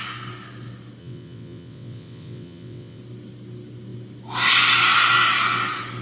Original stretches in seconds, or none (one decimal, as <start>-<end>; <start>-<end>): 0.0-1.0; 3.0-6.0

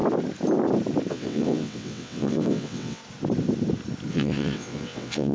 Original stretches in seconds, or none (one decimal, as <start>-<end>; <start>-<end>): 0.0-1.1; 3.0-4.1

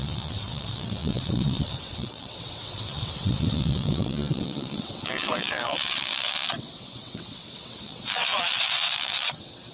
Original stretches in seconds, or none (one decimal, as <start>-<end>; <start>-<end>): none

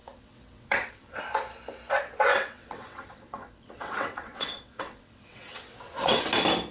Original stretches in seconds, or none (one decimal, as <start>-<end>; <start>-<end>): 1.2-2.3; 6.3-6.7

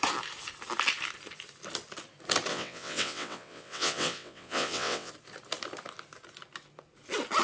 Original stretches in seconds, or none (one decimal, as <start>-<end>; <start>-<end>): 0.0-2.5; 5.1-7.4

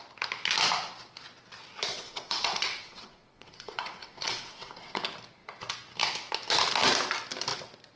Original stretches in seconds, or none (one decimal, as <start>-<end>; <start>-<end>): 0.0-1.9; 5.0-8.0